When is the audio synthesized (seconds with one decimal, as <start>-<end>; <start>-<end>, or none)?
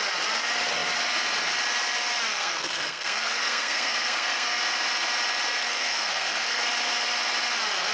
2.3-4.6; 5.6-6.6